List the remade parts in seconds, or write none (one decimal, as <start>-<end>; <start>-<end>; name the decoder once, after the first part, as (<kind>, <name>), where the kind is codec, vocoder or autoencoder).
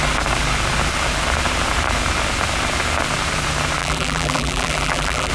3.8-5.3 (vocoder, BigVGAN v2)